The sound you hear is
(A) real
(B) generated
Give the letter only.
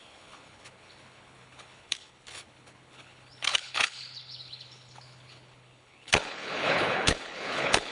B